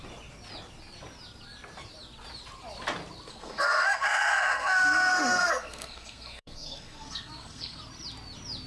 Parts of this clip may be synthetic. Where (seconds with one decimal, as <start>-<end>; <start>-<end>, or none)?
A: 3.3-7.8